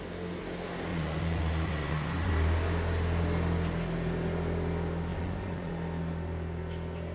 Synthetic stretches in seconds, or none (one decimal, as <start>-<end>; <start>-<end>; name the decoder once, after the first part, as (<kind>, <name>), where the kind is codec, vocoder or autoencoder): 0.9-2.3 (vocoder, Vocos); 5.1-5.7